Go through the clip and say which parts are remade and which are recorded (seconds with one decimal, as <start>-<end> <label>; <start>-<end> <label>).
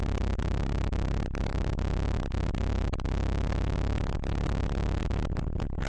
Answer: 0.0-5.9 recorded